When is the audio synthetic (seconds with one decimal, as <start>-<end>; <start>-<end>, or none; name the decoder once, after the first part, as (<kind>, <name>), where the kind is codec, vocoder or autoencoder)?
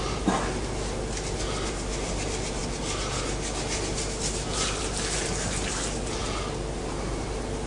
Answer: none